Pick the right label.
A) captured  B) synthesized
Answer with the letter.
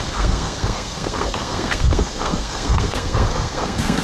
B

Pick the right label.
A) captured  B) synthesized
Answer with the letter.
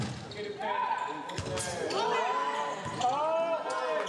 A